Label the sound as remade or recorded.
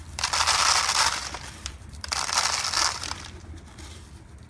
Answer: recorded